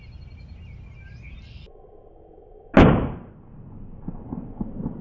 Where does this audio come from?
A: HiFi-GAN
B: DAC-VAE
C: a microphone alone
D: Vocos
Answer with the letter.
C